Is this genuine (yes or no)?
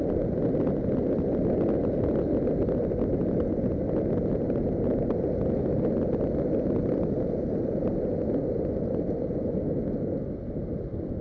yes